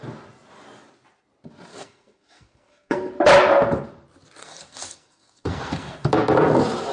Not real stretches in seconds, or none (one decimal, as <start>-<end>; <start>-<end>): 1.7-3.1; 4.4-6.1